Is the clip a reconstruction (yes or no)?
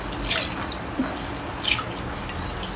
no